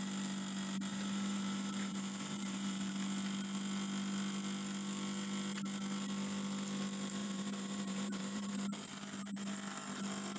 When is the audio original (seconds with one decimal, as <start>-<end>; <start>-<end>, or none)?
0.0-0.9; 2.9-7.2; 8.5-10.4